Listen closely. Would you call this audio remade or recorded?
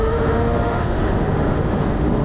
remade